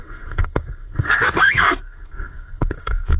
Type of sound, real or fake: fake